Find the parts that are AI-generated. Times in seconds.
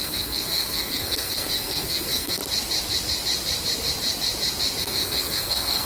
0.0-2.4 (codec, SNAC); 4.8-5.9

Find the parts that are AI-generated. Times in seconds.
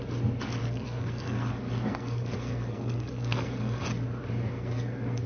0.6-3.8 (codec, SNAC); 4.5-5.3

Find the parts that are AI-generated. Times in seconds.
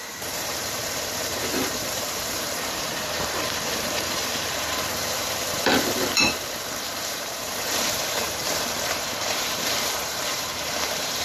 0.0-11.2 (vocoder, BigVGAN v2)